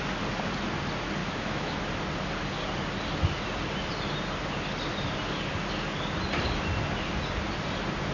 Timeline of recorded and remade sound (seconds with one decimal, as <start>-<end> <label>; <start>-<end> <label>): 0.0-1.2 recorded; 1.2-1.8 remade; 1.8-8.1 recorded